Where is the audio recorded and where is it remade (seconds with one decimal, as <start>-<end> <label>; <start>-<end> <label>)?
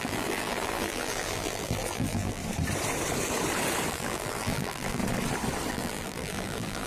0.0-2.4 remade; 2.4-3.9 recorded; 3.9-5.0 remade; 5.0-5.7 recorded; 5.7-6.9 remade